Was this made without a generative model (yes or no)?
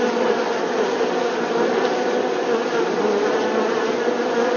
yes